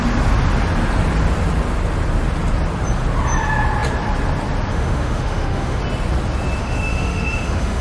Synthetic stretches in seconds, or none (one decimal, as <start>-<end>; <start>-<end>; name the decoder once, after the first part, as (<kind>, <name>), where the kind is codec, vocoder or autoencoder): 4.7-5.8 (autoencoder, DAC-VAE); 6.6-7.8